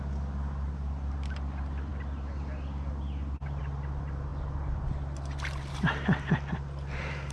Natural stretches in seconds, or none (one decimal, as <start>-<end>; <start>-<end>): 0.0-7.3